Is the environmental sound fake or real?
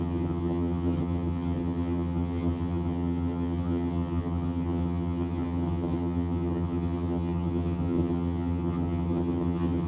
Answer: fake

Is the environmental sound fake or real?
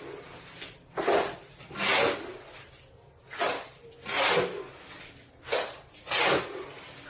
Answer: real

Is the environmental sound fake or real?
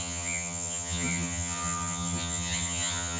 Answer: fake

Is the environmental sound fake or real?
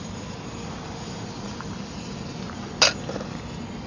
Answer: real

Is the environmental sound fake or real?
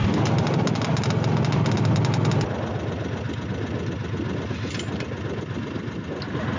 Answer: real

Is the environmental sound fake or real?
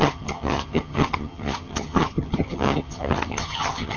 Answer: fake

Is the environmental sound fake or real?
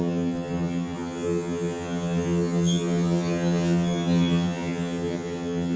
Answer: fake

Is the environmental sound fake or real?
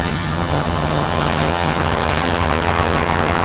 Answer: fake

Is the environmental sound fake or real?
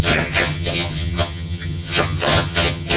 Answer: fake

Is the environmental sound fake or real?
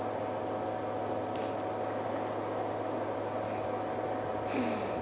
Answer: real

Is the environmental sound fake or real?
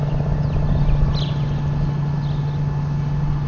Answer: real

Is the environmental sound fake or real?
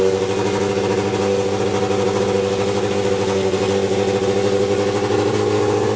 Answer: real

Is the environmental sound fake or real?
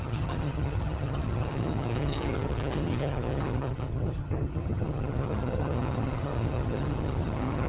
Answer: fake